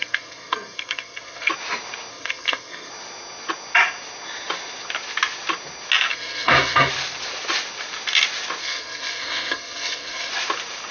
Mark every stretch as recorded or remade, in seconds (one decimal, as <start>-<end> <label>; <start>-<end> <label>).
0.0-1.5 remade; 1.5-2.1 recorded; 2.1-2.9 remade; 2.9-6.1 recorded; 6.1-6.9 remade; 6.9-8.6 recorded; 8.6-10.3 remade; 10.3-10.9 recorded